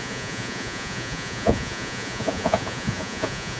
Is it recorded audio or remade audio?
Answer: remade